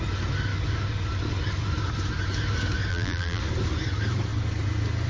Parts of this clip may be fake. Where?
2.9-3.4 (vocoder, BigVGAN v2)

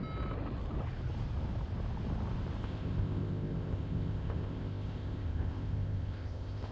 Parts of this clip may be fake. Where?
2.6-6.7 (codec, ZipCodec)